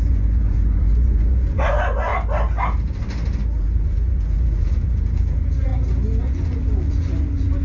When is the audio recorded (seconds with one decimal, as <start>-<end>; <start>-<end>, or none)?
2.1-3.6; 5.7-6.2